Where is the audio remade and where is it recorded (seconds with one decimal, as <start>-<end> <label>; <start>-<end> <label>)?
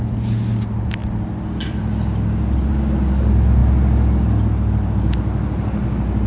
0.0-6.3 recorded